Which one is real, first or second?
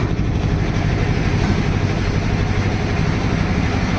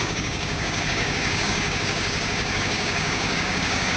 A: first